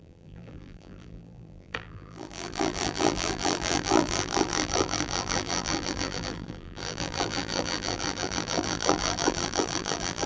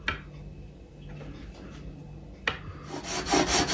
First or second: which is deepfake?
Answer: first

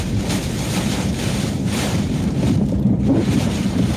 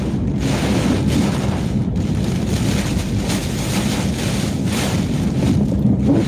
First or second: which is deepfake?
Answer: first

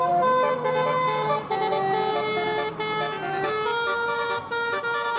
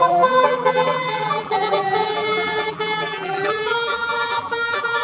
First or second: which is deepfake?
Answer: second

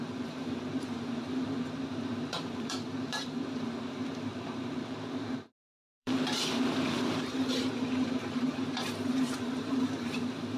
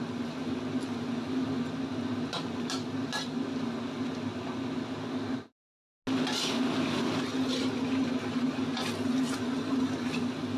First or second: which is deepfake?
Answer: first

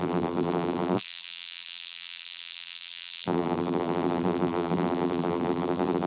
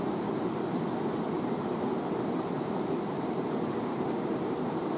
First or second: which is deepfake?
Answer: first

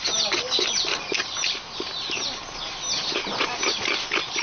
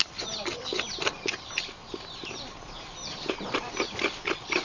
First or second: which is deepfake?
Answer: second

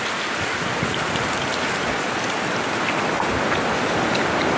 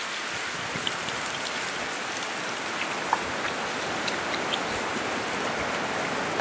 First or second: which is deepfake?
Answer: first